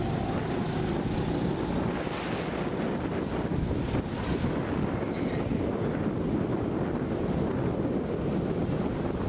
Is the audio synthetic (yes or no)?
no